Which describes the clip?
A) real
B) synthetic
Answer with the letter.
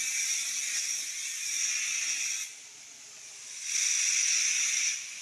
A